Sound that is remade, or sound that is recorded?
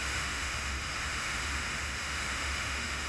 remade